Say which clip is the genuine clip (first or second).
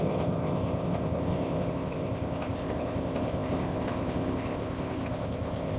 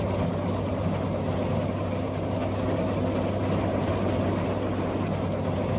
second